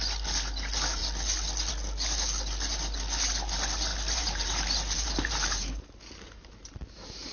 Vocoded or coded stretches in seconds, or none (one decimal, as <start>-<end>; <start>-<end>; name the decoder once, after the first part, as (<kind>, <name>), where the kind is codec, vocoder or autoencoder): 3.9-7.3 (vocoder, BigVGAN v2)